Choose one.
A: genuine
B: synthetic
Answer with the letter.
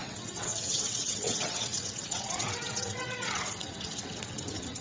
B